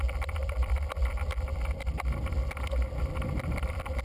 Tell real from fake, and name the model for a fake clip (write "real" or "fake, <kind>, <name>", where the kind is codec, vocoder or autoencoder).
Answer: real